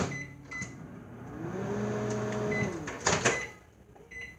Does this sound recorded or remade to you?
recorded